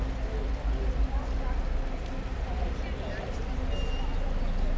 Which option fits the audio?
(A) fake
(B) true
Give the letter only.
B